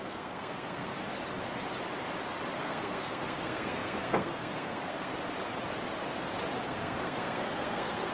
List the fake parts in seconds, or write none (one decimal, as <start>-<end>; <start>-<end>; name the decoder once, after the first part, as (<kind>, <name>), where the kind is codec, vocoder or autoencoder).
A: 0.0-0.9 (codec, SNAC); 2.6-5.1; 6.6-8.1